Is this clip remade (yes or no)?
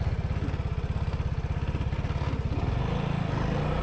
no